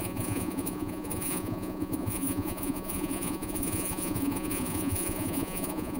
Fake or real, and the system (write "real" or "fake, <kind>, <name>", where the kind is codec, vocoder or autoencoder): fake, vocoder, Vocos